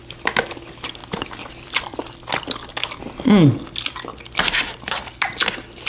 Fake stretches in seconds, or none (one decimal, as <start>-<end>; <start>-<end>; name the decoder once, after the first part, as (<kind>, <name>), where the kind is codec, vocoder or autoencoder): 1.0-2.1 (vocoder, BigVGAN v2)